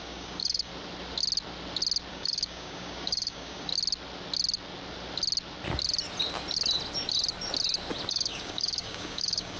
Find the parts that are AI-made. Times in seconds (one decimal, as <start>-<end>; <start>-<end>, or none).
0.0-0.7; 2.1-3.7; 8.1-9.6